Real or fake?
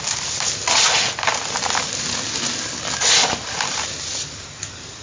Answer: real